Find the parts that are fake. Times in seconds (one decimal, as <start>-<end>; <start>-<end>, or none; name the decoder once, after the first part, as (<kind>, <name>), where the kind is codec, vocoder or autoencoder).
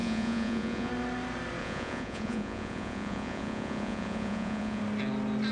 0.0-0.9 (vocoder, Vocos); 1.6-4.8